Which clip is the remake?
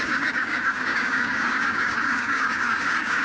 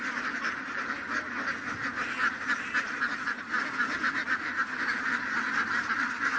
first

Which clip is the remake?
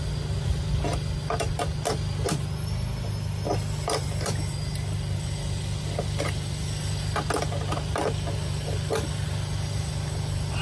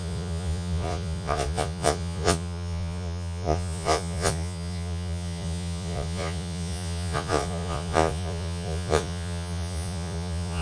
second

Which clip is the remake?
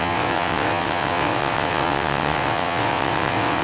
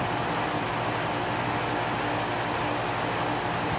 first